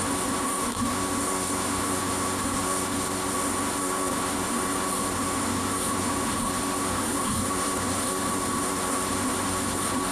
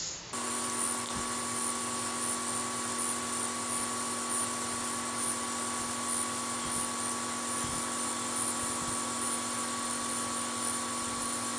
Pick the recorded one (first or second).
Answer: second